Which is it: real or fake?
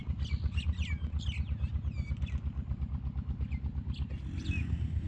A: real